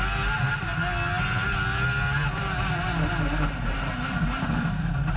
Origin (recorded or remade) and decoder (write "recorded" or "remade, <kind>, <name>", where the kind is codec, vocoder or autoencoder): recorded